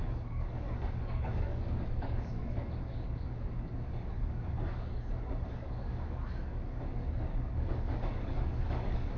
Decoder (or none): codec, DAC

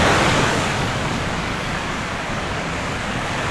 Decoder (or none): codec, DAC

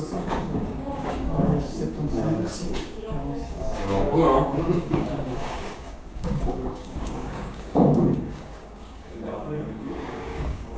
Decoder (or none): codec, DAC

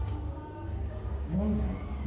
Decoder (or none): codec, DAC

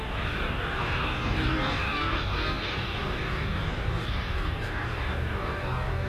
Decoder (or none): codec, DAC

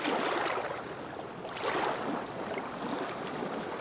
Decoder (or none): none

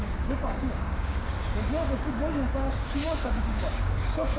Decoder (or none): codec, DAC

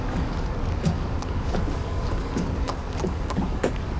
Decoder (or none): codec, DAC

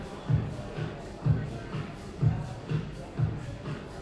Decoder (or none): codec, DAC